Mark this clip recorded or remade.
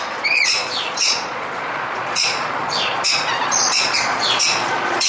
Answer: remade